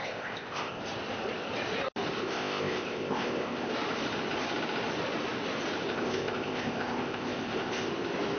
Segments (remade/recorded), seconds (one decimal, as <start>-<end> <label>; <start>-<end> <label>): 0.0-0.8 remade; 0.8-2.2 recorded; 2.2-3.7 remade; 3.7-5.9 recorded; 5.9-7.9 remade; 7.9-8.4 recorded